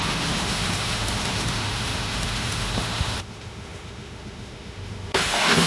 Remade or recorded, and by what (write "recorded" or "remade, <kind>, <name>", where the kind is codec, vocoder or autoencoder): remade, autoencoder, DAC-VAE